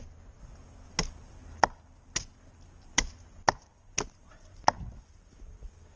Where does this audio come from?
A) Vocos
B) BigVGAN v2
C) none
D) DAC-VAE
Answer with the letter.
C